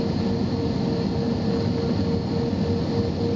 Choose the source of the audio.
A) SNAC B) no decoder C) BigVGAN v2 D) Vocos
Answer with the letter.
B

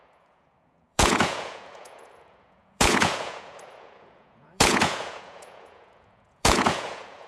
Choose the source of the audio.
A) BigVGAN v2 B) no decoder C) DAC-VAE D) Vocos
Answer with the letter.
D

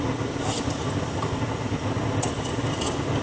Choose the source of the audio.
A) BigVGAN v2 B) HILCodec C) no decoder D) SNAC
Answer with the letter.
C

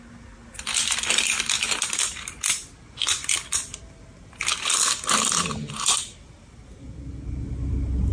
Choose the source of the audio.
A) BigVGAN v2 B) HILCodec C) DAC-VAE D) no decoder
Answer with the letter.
D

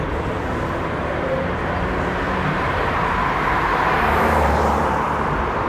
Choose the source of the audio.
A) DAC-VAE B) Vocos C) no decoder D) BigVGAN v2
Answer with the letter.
D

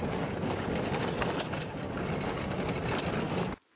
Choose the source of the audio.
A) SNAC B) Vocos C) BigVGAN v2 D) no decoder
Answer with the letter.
D